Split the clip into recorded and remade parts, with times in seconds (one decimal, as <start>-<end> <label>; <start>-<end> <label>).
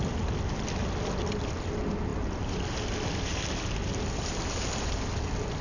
0.0-5.6 recorded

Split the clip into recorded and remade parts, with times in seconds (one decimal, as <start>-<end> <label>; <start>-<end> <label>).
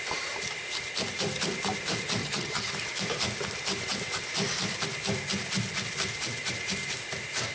0.0-2.2 recorded; 2.2-2.7 remade; 2.7-7.5 recorded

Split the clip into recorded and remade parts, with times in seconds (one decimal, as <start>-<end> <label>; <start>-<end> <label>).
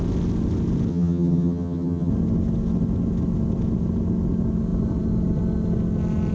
0.0-0.9 recorded; 0.9-2.1 remade; 2.1-6.3 recorded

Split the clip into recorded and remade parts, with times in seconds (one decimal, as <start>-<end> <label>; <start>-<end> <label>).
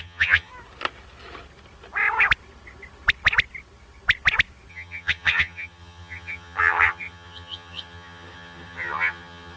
0.0-0.5 remade; 0.5-4.7 recorded; 4.7-9.6 remade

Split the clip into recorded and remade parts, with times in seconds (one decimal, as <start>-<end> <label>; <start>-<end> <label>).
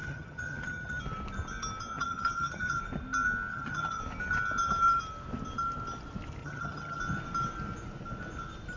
0.0-1.0 remade; 1.0-1.9 recorded; 1.9-2.8 remade; 2.8-3.5 recorded; 3.5-4.0 remade; 4.0-6.4 recorded; 6.4-7.0 remade; 7.0-8.8 recorded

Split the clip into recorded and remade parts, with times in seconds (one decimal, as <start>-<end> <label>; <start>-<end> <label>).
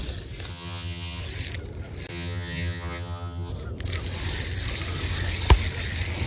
0.0-0.5 recorded; 0.5-1.2 remade; 1.2-2.1 recorded; 2.1-3.5 remade; 3.5-6.3 recorded